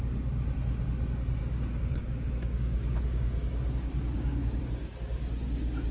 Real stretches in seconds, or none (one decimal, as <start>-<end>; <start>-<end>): 0.0-1.4; 4.6-5.9